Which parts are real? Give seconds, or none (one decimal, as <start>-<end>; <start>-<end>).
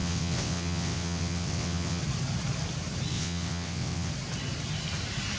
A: 2.0-3.1; 4.1-5.4